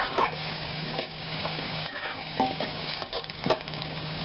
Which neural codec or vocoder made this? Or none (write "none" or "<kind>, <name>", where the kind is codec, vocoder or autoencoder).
codec, DAC